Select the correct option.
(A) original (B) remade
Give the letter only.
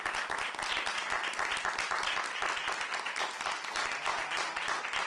A